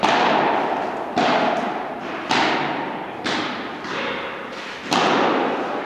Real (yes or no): yes